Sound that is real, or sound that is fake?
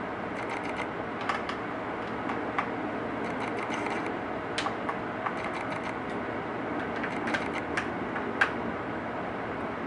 real